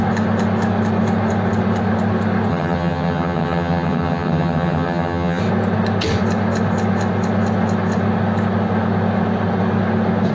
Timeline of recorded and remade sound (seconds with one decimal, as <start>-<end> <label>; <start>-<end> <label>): 0.0-2.5 recorded; 2.5-5.4 remade; 5.4-10.3 recorded